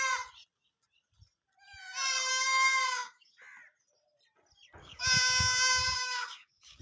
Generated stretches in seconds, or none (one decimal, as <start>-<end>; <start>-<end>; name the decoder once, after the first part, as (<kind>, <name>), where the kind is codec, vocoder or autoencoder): 2.3-3.3 (codec, DAC); 4.8-6.8